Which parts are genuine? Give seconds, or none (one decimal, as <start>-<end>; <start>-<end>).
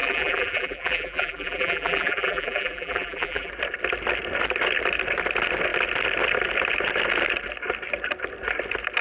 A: 3.5-9.0